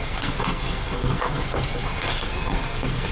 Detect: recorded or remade remade